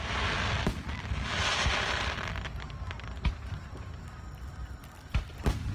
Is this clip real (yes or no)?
yes